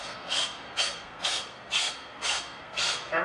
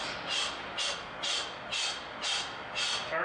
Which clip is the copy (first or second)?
first